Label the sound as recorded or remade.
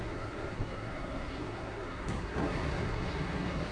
remade